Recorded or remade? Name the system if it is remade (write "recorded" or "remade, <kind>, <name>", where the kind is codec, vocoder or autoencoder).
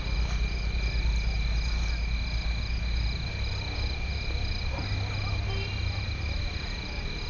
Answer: recorded